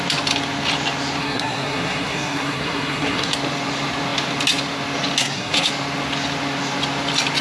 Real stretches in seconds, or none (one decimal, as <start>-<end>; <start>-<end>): 0.0-1.2; 3.3-5.2; 5.7-7.4